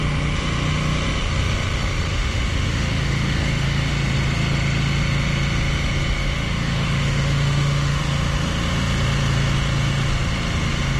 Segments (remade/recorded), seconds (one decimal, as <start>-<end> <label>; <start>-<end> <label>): 0.0-2.1 recorded; 2.1-3.9 remade; 3.9-6.2 recorded; 6.2-8.0 remade; 8.0-11.0 recorded